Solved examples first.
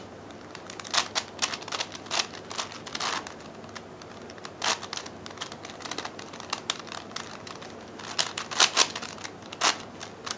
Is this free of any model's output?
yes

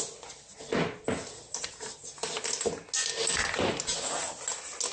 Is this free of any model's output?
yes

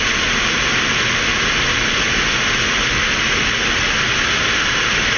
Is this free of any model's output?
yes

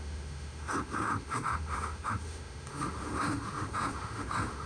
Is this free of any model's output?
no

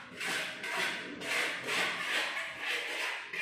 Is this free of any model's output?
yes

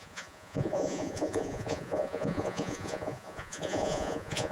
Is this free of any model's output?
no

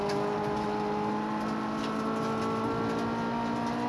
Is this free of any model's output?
yes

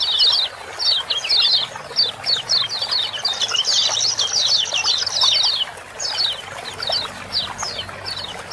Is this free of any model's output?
yes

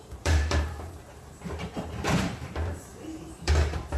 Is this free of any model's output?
no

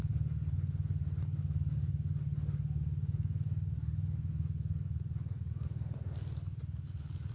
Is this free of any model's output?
yes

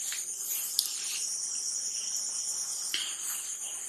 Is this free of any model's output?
yes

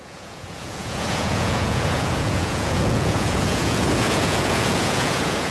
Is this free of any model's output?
no